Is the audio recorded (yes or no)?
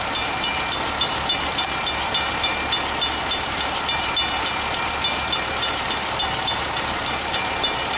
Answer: yes